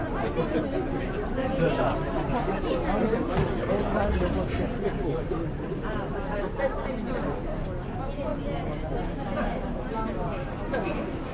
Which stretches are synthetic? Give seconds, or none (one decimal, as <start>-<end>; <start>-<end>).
none